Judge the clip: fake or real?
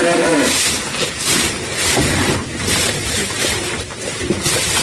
fake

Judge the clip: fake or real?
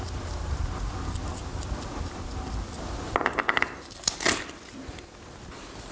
fake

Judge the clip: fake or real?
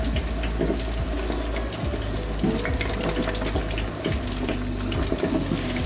real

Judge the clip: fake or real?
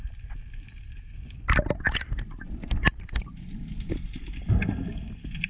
real